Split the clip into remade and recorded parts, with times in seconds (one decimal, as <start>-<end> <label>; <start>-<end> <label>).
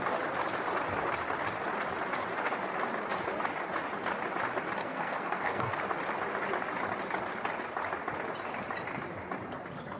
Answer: 0.0-4.8 recorded; 4.8-5.8 remade; 5.8-10.0 recorded